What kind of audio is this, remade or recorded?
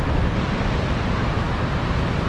recorded